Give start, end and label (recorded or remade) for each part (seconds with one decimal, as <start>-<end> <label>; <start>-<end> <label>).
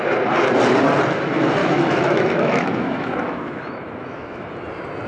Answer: 0.0-1.6 recorded; 1.6-4.5 remade; 4.5-5.1 recorded